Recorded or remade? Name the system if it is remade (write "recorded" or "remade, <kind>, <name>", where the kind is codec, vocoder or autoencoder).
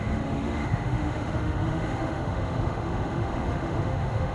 remade, autoencoder, DAC-VAE